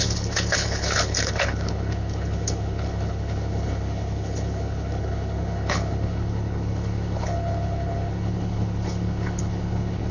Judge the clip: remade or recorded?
remade